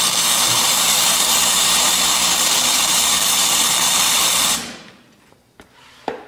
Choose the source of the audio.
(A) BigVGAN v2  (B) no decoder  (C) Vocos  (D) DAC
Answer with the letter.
A